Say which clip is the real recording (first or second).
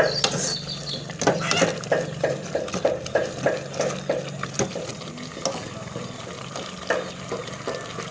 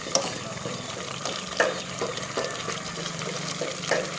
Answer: first